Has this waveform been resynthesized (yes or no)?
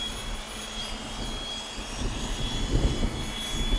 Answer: no